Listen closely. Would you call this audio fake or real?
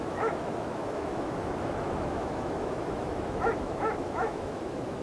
fake